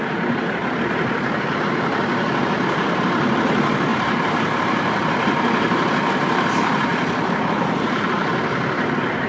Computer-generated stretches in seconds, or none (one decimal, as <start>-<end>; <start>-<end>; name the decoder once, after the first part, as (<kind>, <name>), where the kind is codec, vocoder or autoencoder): 0.0-0.6 (vocoder, BigVGAN v2); 1.1-6.9; 8.6-9.3